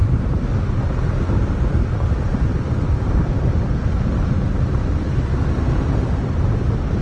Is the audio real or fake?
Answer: real